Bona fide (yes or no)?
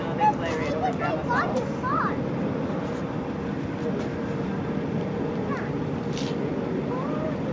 yes